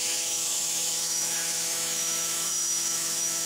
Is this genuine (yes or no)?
no